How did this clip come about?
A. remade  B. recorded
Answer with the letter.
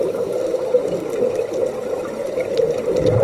B